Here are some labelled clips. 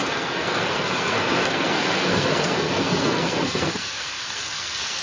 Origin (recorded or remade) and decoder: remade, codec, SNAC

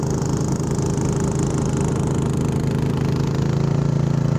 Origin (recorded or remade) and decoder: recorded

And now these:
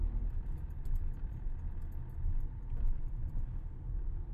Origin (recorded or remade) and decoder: recorded